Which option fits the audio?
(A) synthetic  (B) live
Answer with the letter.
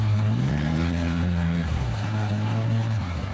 A